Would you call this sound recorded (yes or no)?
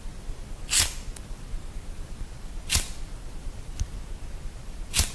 yes